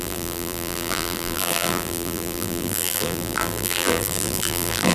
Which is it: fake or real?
fake